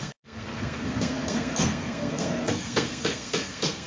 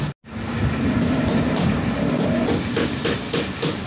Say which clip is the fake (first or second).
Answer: first